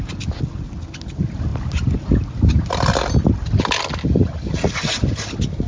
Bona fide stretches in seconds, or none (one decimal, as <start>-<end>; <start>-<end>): 0.0-5.7